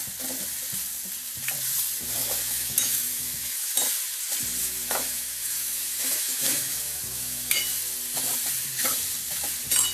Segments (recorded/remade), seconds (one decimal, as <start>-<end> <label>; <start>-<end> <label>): 0.0-2.2 recorded; 2.2-3.7 remade; 3.7-4.6 recorded; 4.6-7.6 remade; 7.6-9.9 recorded